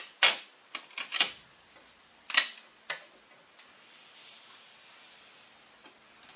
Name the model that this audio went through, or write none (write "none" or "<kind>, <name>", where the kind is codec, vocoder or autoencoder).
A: none